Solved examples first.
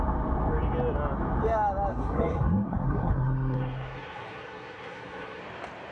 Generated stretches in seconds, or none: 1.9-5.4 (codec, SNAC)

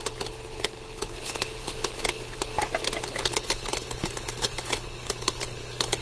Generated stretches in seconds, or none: 0.0-2.5 (codec, HILCodec); 3.0-6.0